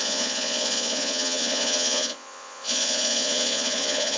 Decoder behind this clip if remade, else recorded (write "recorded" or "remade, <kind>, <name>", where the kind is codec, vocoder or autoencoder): remade, vocoder, Vocos